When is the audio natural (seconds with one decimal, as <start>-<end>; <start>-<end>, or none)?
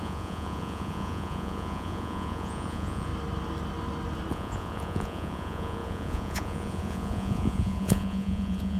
3.1-4.3